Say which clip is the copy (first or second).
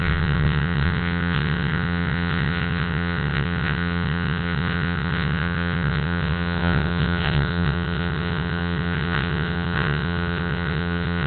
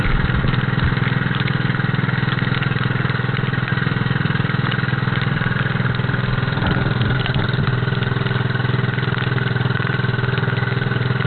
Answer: first